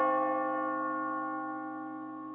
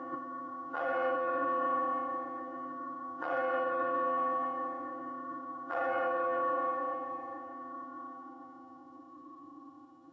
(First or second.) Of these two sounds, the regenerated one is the second